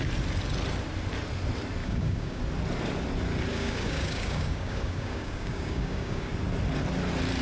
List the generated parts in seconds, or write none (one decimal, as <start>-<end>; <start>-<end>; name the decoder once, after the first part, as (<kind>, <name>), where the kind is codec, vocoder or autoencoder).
1.8-2.4 (codec, DAC); 3.5-6.3

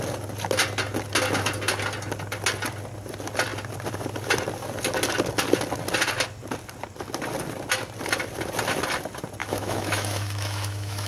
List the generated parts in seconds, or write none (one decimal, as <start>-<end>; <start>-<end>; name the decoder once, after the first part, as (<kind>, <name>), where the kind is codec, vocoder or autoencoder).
9.4-11.1 (autoencoder, DAC-VAE)

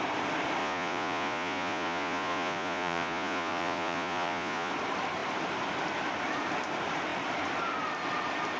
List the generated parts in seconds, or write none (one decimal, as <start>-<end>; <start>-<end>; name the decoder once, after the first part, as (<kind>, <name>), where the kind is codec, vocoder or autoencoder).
0.6-4.7 (vocoder, Vocos)

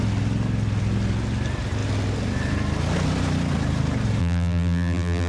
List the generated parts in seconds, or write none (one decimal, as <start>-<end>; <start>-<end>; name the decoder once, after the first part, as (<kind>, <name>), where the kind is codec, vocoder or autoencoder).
4.2-5.3 (vocoder, BigVGAN v2)

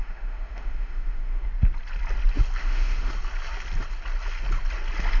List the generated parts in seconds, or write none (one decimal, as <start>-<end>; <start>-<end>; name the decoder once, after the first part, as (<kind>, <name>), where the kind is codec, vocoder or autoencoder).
0.0-1.5 (autoencoder, DAC-VAE); 2.6-3.1

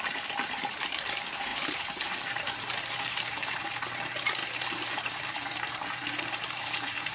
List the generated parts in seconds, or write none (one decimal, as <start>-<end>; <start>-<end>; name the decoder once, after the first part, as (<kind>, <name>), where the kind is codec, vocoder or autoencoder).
0.0-7.1 (vocoder, BigVGAN v2)

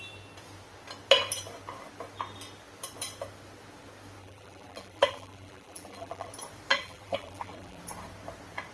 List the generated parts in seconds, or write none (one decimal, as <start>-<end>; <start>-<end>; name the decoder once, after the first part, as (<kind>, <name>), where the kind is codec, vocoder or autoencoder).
4.2-6.3 (vocoder, BigVGAN v2); 6.7-7.8